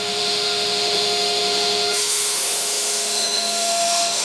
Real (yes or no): no